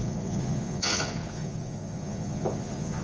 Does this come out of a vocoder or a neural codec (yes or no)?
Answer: yes